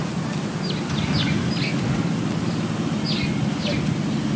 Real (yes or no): yes